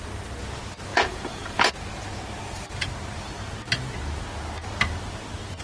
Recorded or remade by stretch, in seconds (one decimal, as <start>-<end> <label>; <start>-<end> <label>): 0.0-0.9 recorded; 0.9-1.7 remade; 1.7-5.6 recorded